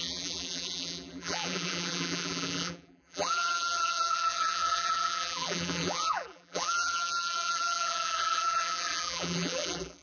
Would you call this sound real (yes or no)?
no